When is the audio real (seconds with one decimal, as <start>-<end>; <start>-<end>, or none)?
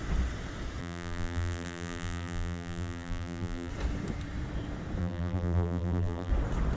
0.0-0.8; 3.7-5.0; 6.3-6.8